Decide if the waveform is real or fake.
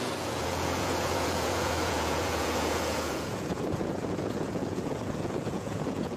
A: fake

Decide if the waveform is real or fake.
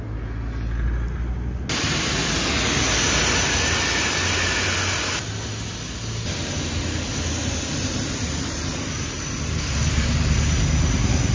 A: real